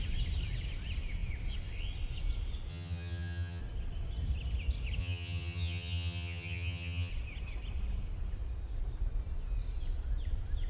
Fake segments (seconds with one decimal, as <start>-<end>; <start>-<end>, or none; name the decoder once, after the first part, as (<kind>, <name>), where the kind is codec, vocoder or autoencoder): 2.7-3.6 (vocoder, HiFi-GAN); 5.0-7.1